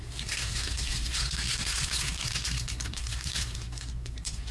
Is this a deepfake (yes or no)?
yes